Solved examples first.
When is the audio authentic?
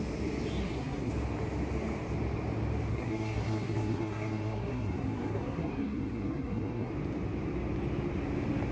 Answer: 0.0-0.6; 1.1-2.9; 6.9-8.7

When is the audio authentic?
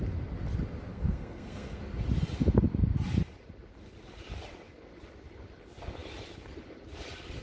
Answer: 0.0-0.9; 1.8-7.4